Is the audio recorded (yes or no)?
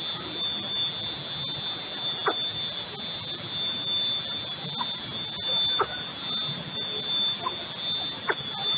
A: yes